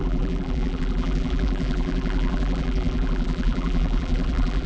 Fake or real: fake